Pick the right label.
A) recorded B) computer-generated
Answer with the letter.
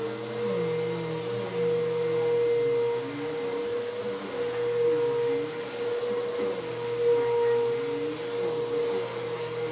A